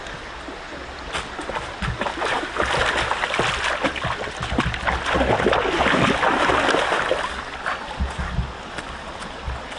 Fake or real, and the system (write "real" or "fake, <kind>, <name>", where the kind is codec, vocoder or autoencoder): real